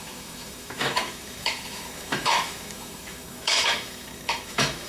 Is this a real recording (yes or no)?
no